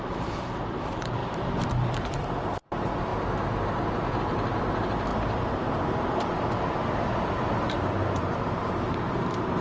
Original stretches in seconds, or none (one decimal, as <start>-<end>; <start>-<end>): none